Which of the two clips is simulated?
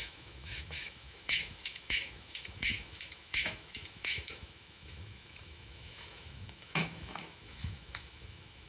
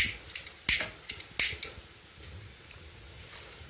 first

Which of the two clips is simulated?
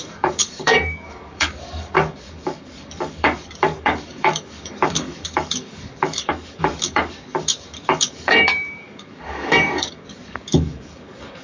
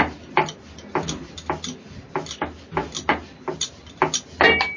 first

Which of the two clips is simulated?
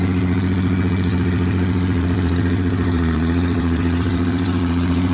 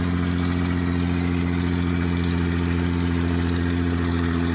first